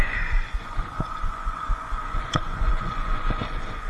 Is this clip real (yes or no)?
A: no